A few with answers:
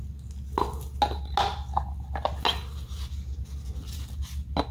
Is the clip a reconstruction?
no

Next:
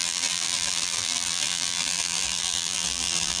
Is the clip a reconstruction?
yes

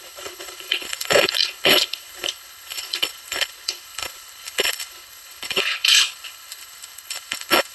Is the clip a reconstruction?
yes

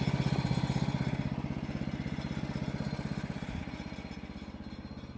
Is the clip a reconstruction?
no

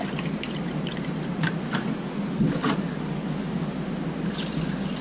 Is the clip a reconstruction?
no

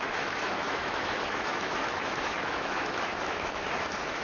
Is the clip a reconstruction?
yes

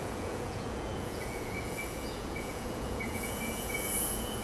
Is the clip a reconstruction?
yes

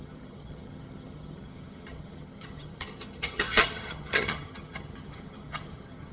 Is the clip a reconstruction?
yes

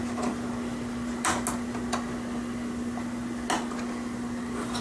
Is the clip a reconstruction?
no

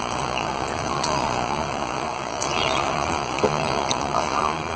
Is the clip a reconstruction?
yes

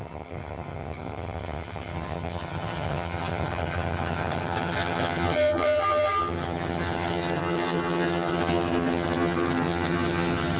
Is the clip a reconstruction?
yes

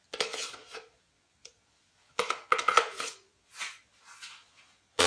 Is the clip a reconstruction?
yes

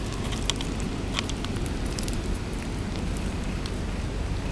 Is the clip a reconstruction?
no